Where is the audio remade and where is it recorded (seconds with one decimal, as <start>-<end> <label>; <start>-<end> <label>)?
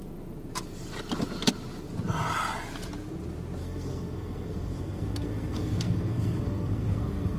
0.0-3.6 recorded; 3.6-7.4 remade